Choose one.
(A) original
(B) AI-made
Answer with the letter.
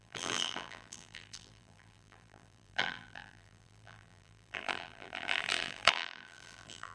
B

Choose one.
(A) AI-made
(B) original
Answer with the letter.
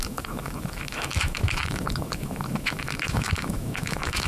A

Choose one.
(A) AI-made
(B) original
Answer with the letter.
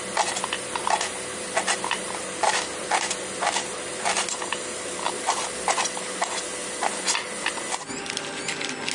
B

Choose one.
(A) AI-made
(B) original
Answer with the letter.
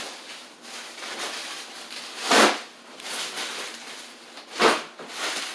B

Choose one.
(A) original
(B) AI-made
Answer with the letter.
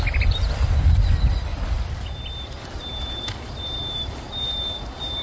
A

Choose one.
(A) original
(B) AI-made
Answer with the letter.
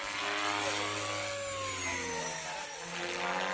A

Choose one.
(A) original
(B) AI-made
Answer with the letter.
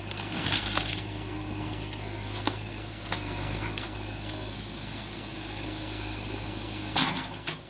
B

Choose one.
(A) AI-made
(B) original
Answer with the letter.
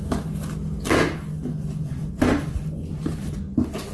B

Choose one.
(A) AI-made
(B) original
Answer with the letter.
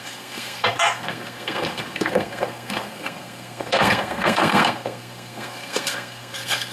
A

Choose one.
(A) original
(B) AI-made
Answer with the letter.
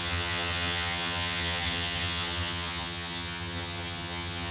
B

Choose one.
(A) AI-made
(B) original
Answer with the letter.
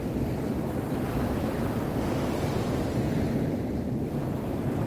B